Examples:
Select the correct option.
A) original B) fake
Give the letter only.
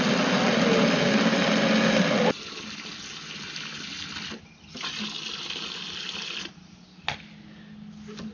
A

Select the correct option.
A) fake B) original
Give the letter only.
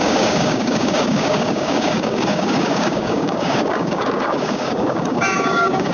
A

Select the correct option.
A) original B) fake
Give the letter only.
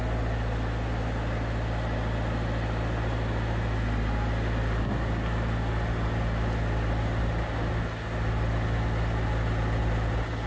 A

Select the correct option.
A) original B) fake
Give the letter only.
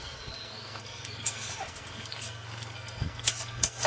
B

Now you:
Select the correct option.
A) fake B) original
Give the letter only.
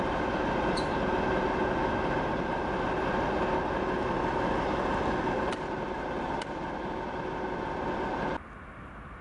B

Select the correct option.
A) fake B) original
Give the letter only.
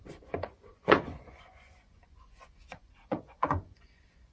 A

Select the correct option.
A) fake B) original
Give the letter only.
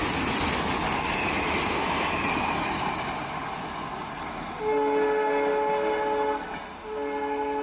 B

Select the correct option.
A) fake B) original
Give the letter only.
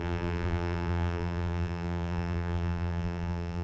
A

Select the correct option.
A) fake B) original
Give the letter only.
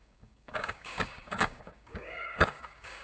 A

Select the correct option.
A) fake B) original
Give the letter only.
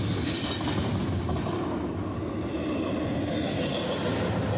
B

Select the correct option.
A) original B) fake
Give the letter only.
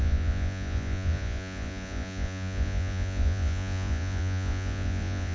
B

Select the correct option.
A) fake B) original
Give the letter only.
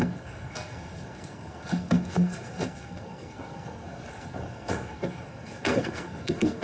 A